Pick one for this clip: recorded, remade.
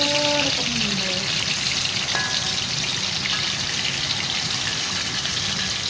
recorded